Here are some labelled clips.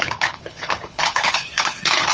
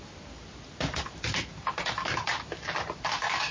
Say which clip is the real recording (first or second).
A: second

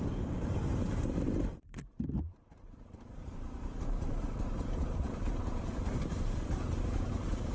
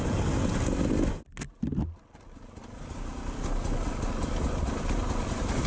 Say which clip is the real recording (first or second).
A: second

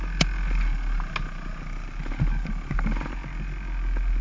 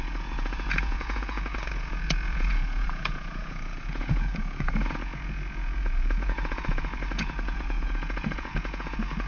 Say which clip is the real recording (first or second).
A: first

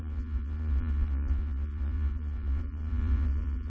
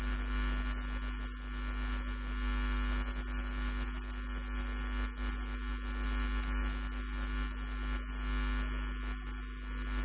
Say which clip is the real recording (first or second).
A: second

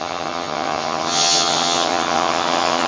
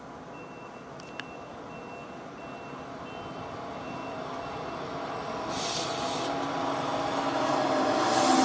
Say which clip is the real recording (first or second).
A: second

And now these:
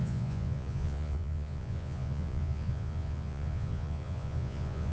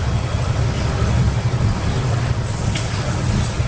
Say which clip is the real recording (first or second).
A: second